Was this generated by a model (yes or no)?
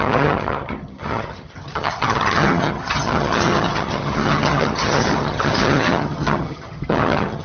yes